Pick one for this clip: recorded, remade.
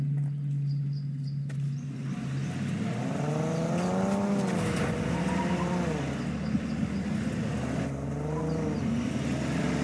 recorded